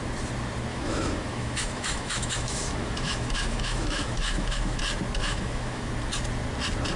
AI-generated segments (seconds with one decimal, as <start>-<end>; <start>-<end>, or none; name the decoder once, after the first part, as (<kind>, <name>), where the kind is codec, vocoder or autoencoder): 0.7-4.8 (autoencoder, DAC-VAE); 5.2-5.9